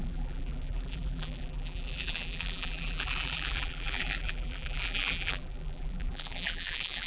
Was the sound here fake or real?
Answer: fake